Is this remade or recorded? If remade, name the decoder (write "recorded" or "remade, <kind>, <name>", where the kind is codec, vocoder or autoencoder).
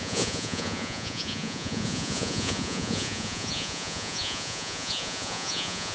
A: remade, vocoder, Vocos